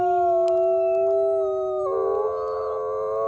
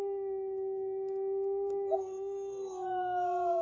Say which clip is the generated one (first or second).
second